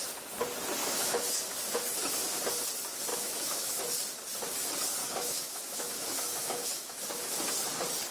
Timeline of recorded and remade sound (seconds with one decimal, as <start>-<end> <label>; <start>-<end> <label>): 0.0-0.8 recorded; 0.8-1.4 remade; 1.4-3.1 recorded; 3.1-3.8 remade; 3.8-5.0 recorded; 5.0-7.0 remade; 7.0-8.1 recorded